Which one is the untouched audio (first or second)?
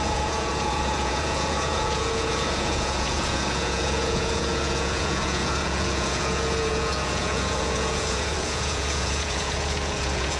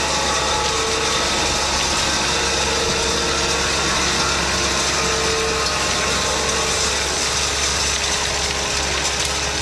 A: second